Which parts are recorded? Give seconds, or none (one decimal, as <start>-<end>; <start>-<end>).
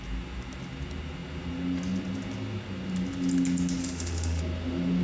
0.0-3.8; 4.4-5.0